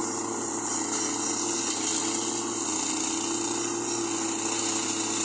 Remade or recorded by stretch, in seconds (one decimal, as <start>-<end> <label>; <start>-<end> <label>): 0.0-5.2 recorded